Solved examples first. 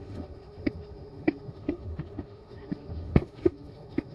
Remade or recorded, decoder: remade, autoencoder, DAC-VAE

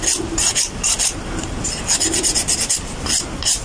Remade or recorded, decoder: recorded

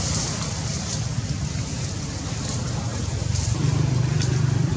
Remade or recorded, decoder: remade, vocoder, BigVGAN v2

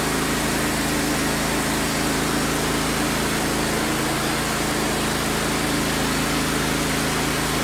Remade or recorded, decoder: recorded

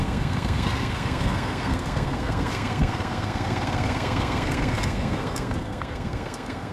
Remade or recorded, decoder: remade, codec, SNAC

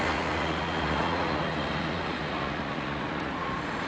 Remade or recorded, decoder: remade, vocoder, Vocos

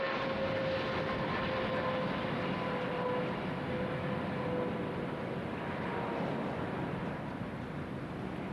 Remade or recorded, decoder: recorded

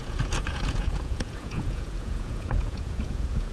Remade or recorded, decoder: remade, vocoder, Vocos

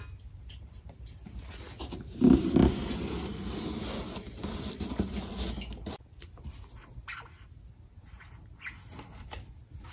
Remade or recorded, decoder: recorded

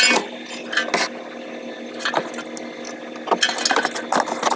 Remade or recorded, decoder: recorded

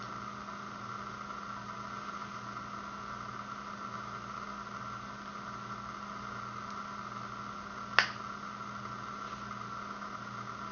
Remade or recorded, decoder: recorded